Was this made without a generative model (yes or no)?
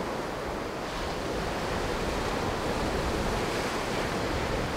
yes